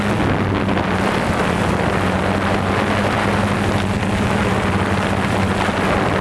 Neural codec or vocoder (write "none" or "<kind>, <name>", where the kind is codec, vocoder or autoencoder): none